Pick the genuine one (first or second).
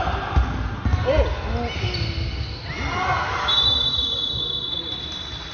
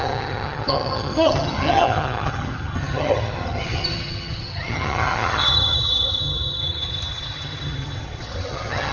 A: first